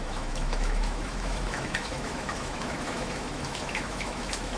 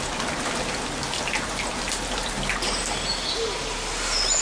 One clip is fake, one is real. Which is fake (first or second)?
first